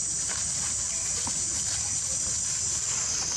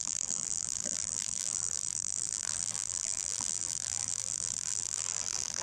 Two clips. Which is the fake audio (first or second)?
second